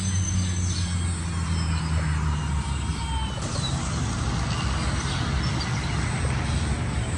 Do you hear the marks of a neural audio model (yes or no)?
no